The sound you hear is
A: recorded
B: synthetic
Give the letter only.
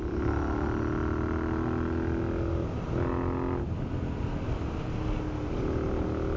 A